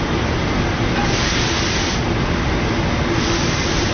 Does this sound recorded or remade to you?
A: recorded